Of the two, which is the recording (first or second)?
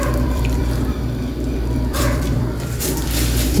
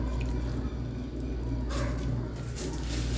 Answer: second